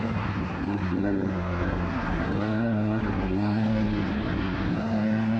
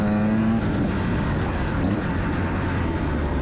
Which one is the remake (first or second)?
first